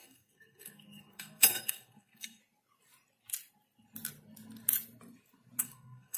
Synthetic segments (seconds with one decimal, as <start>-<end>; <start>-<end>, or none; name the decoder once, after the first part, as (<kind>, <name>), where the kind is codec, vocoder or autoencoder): 0.0-2.4 (codec, SNAC); 5.6-6.2